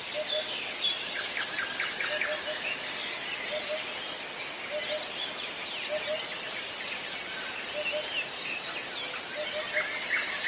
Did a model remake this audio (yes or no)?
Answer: no